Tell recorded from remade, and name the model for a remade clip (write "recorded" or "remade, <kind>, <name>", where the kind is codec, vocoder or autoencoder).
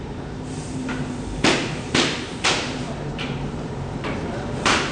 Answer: remade, vocoder, BigVGAN v2